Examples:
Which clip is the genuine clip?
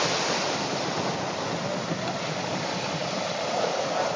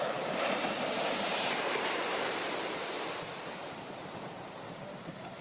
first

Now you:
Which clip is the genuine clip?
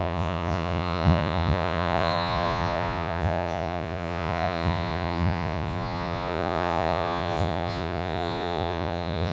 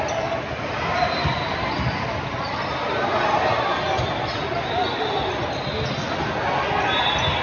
second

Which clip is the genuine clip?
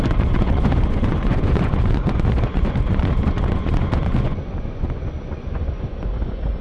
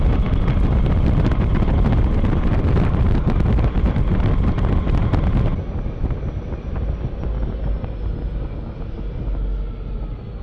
second